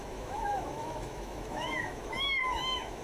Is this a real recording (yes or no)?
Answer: no